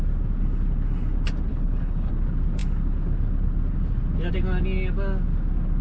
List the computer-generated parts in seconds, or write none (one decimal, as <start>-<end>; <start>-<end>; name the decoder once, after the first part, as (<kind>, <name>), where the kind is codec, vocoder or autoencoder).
1.5-2.1 (codec, HILCodec)